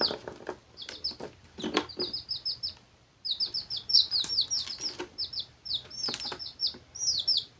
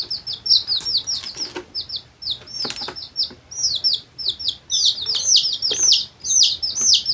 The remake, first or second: first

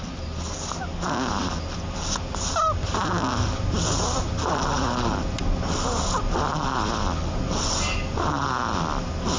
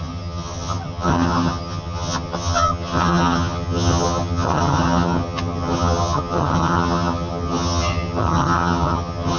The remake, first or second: second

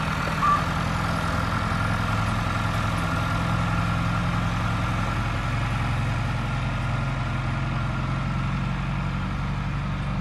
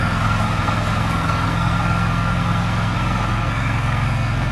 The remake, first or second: second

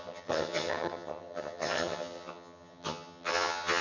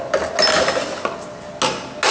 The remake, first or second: first